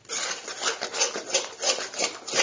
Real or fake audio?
real